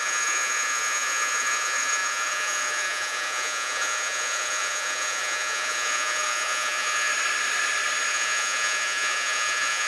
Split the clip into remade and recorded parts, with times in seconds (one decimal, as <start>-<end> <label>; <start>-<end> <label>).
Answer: 0.0-7.1 remade; 7.1-8.1 recorded; 8.1-9.9 remade